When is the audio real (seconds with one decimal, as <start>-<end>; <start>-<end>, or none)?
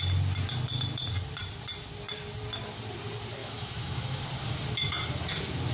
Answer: 0.0-3.4; 4.2-5.7